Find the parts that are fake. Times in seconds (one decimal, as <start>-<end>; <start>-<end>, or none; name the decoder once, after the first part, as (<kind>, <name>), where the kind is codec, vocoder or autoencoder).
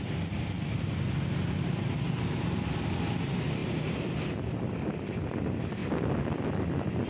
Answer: none